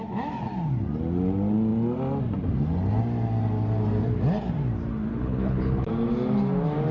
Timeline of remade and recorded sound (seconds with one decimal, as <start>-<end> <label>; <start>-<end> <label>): 0.0-5.1 recorded; 5.1-5.9 remade; 5.9-6.9 recorded